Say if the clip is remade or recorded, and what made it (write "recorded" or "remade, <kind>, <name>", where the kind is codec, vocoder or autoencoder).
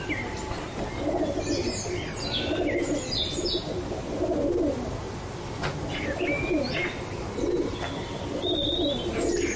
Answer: recorded